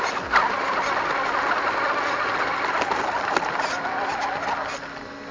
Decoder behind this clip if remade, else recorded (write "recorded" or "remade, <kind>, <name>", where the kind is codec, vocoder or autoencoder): recorded